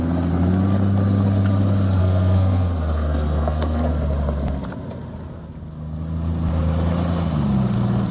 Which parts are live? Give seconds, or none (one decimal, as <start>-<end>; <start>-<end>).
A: 0.0-2.0; 3.9-8.1